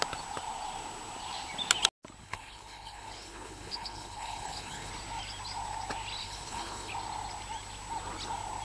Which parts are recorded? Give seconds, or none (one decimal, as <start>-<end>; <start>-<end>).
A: 0.0-2.2; 4.9-6.2; 6.9-8.6